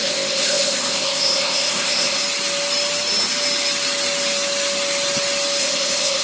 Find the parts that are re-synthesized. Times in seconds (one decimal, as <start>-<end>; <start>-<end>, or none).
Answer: 0.0-2.2; 5.6-6.2